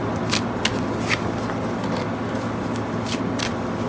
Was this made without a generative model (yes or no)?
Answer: yes